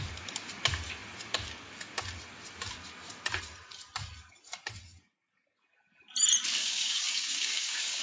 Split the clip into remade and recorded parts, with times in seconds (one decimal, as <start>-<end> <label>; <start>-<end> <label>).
0.0-6.6 recorded; 6.6-8.0 remade